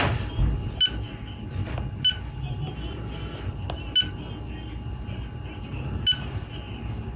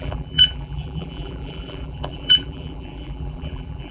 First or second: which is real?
first